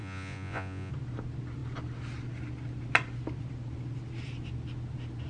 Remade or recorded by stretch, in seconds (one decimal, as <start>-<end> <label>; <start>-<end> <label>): 0.0-0.9 remade; 0.9-5.3 recorded

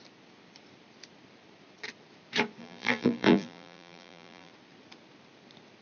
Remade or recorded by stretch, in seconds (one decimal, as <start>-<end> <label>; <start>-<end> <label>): 0.0-2.6 recorded; 2.6-4.5 remade; 4.5-5.8 recorded

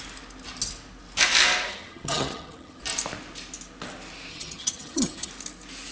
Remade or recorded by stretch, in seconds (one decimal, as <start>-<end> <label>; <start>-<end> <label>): 0.0-1.7 recorded; 1.7-2.8 remade; 2.8-4.3 recorded; 4.3-5.3 remade; 5.3-5.9 recorded

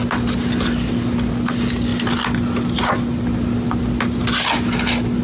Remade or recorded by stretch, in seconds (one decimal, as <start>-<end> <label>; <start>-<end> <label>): 0.0-5.2 recorded

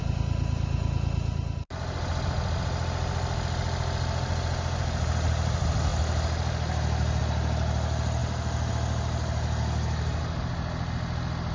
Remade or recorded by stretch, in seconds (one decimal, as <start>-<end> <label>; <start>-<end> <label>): 0.0-11.5 recorded